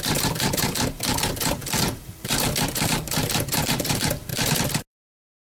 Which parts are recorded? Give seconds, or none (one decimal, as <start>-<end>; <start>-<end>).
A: 4.3-4.9